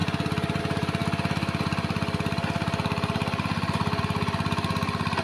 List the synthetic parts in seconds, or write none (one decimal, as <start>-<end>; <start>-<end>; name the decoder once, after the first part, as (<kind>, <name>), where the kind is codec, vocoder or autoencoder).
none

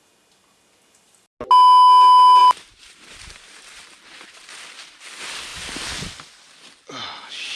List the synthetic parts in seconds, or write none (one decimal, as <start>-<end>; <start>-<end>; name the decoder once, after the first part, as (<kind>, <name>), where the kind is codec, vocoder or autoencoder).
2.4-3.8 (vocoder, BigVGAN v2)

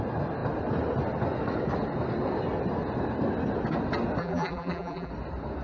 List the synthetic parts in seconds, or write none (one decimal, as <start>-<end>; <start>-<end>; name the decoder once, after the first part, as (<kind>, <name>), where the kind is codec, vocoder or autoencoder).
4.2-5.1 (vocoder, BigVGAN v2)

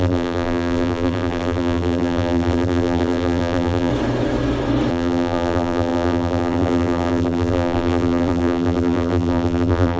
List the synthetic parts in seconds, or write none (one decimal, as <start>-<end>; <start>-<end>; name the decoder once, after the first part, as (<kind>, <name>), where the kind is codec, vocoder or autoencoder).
0.0-3.9 (vocoder, BigVGAN v2); 4.9-10.0

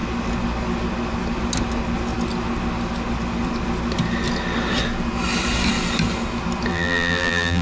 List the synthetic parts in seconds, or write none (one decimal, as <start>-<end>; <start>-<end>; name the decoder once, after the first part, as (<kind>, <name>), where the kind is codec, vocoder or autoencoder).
6.7-7.6 (vocoder, BigVGAN v2)

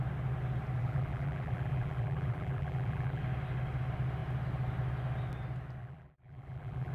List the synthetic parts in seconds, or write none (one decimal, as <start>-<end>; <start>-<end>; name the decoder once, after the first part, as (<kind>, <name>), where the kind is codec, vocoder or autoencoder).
0.8-3.2 (vocoder, BigVGAN v2); 5.8-6.9